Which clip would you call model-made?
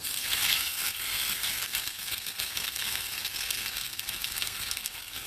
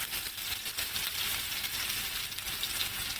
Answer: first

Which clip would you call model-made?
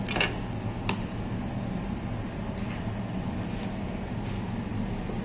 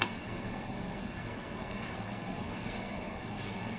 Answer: second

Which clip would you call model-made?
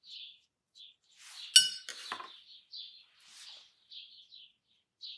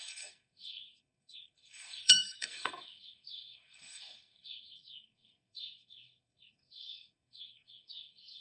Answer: second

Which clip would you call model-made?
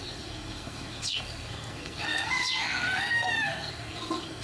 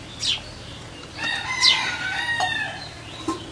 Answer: first